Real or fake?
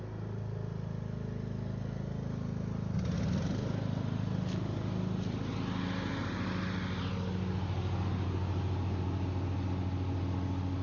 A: real